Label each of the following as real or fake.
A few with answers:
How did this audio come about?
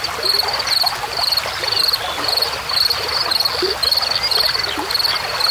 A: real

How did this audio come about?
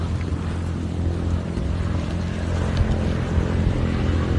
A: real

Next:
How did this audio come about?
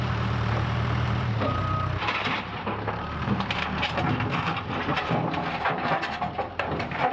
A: fake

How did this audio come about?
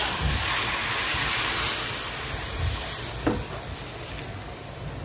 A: real